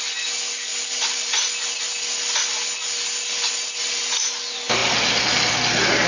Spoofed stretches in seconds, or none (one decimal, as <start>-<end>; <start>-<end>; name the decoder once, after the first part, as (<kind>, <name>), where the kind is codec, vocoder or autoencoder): none